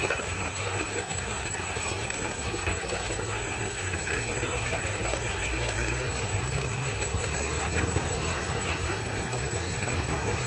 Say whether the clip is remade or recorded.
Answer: remade